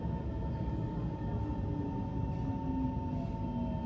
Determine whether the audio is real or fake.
real